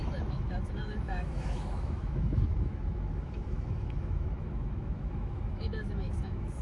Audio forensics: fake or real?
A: fake